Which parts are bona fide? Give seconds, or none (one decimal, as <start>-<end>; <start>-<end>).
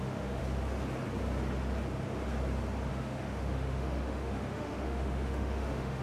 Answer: 0.4-2.9